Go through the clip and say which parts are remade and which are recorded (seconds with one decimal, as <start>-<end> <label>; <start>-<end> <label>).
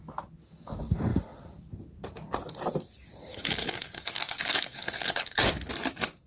0.0-3.3 recorded; 3.3-5.5 remade; 5.5-6.3 recorded